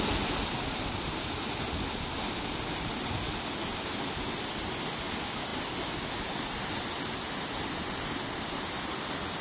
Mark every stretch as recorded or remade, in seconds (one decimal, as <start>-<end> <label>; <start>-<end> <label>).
0.0-9.4 recorded